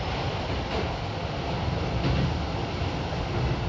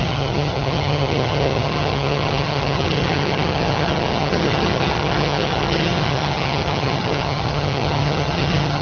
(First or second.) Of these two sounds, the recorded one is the first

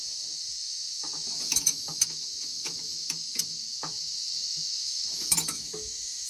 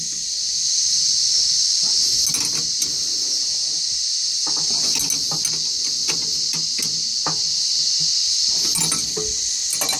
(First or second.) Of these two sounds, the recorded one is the second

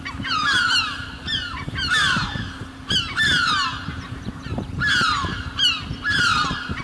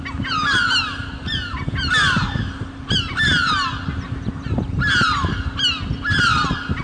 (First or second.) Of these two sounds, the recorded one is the second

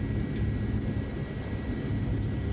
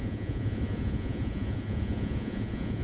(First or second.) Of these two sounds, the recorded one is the first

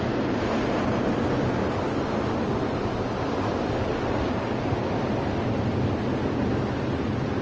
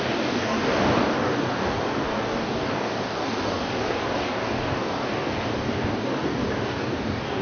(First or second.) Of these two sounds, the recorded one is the first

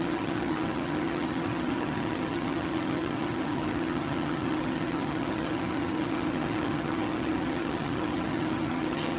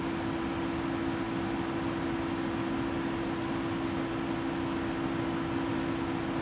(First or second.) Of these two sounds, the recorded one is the second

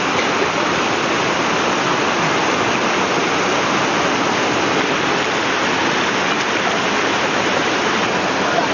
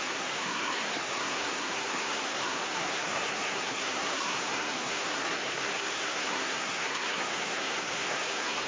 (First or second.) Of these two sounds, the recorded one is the first